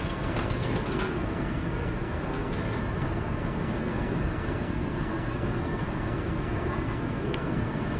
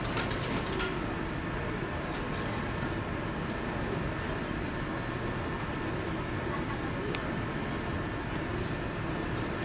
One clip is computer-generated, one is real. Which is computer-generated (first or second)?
first